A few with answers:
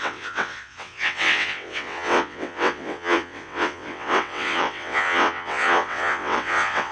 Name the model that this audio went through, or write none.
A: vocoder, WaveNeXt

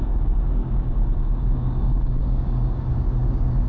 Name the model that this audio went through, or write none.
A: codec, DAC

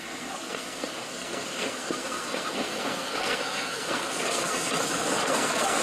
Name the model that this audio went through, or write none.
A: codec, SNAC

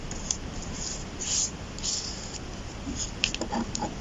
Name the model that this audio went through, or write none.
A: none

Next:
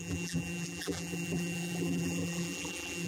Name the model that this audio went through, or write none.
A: vocoder, BigVGAN v2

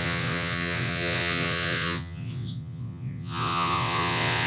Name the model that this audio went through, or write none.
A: vocoder, WaveNeXt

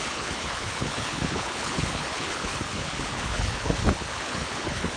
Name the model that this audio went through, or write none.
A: codec, HILCodec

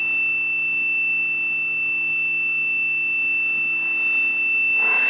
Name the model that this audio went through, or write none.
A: autoencoder, DAC-VAE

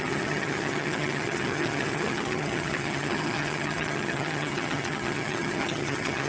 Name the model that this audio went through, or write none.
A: vocoder, HiFi-GAN